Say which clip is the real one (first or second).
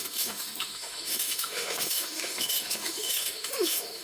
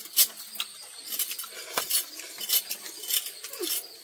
second